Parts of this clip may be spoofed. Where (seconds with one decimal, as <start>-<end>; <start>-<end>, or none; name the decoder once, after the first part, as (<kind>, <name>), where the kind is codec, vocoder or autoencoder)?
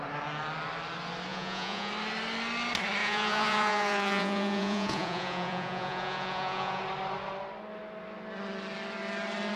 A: 1.3-1.9 (vocoder, Vocos); 3.0-6.8